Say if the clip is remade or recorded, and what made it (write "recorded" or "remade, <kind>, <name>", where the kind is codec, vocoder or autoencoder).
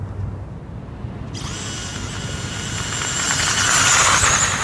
recorded